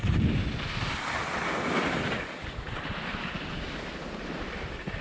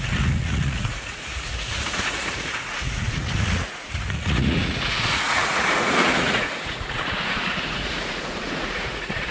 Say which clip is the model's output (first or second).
second